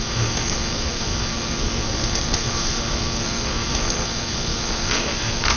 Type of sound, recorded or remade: remade